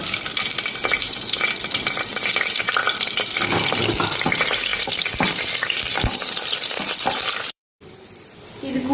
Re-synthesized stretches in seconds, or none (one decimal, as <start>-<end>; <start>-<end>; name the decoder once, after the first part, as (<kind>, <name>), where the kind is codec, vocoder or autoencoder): 4.7-8.4 (vocoder, BigVGAN v2)